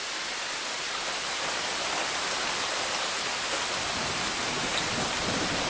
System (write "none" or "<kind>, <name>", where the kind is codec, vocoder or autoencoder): vocoder, BigVGAN v2